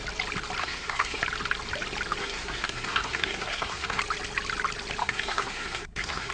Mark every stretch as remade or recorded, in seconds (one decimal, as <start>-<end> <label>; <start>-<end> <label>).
0.0-0.6 recorded; 0.6-1.2 remade; 1.2-2.2 recorded; 2.2-4.0 remade; 4.0-5.0 recorded; 5.0-6.3 remade